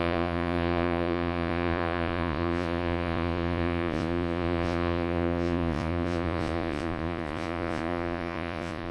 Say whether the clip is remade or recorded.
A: remade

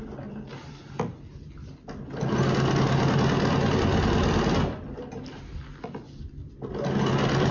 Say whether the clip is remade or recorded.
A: recorded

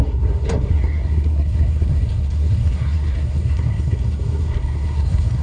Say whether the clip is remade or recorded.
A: remade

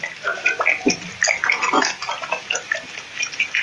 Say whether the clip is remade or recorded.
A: recorded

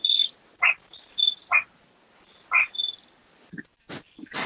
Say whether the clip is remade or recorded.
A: recorded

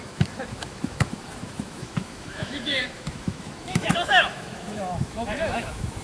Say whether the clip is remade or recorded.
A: remade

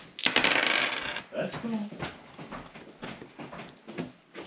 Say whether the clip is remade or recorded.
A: recorded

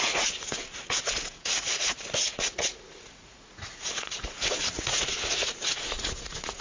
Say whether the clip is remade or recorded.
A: remade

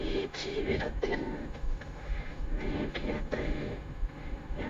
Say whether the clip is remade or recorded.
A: remade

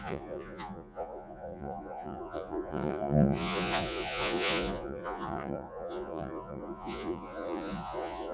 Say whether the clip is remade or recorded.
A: remade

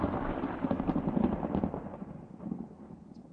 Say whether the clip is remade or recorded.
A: recorded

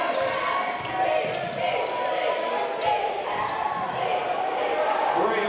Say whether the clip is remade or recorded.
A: remade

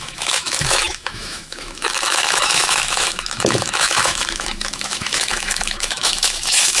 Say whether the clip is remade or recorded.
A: remade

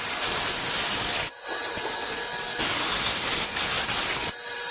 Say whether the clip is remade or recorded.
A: recorded